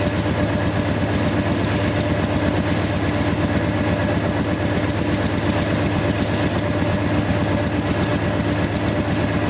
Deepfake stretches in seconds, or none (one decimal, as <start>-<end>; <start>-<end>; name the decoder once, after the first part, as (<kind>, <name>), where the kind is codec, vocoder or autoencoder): none